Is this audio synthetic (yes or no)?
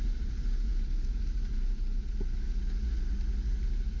no